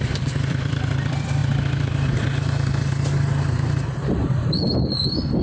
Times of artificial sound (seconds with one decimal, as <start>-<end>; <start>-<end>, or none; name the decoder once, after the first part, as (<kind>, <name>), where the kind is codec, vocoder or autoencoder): 0.0-1.4 (vocoder, BigVGAN v2); 4.0-5.4